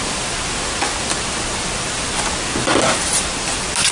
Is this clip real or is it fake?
real